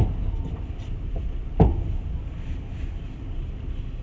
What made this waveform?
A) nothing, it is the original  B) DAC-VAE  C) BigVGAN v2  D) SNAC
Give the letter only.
A